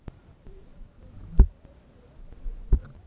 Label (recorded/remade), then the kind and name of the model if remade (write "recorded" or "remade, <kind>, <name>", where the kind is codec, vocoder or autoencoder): recorded